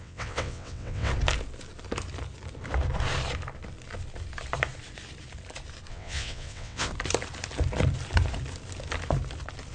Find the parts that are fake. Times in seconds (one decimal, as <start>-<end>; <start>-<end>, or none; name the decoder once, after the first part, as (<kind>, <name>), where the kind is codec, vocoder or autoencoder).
0.0-1.1 (vocoder, WaveNeXt); 5.9-6.9